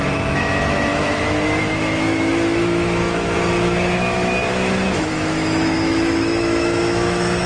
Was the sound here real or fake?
fake